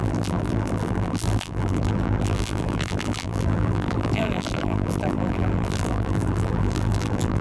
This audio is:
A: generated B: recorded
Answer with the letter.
A